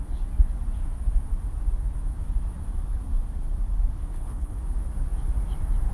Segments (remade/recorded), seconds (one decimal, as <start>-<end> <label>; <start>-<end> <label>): 0.0-4.1 recorded; 4.1-4.6 remade; 4.6-5.9 recorded